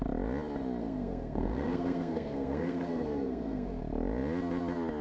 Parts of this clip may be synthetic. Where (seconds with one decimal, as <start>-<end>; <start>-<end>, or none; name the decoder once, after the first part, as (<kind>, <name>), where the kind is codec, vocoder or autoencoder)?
0.8-3.8 (codec, SNAC)